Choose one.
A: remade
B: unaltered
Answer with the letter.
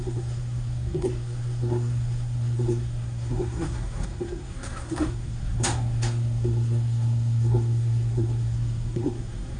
A